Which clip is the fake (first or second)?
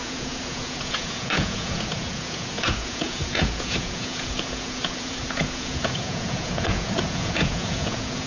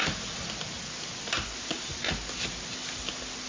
first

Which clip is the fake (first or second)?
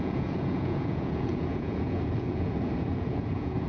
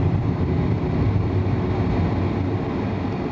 first